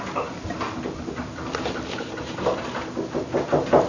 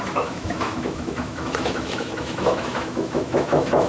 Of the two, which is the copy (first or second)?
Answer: second